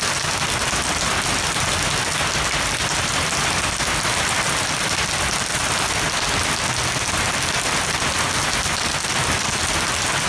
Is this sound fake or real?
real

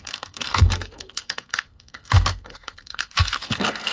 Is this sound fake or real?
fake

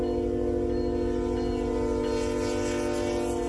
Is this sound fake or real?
real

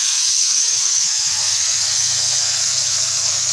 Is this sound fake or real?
fake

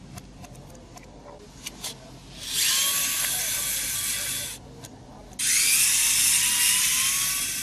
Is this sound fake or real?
real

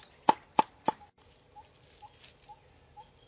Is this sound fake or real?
real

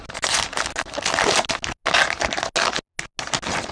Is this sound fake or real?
real